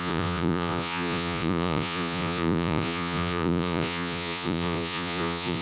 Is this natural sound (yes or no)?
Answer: no